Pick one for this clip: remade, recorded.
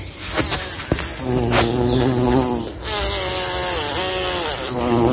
recorded